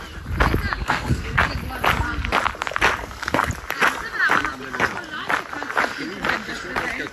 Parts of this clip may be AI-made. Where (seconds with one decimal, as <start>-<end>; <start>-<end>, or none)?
0.8-1.4; 3.0-3.5